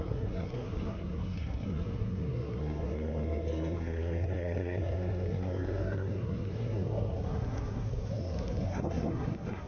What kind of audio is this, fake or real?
fake